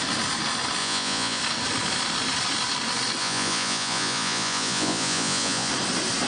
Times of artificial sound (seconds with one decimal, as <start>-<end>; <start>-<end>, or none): 0.8-1.4; 3.2-5.7